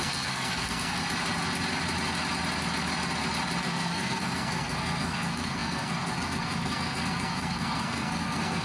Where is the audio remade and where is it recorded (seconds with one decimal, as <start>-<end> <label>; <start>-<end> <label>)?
0.0-1.0 remade; 1.0-3.6 recorded; 3.6-8.6 remade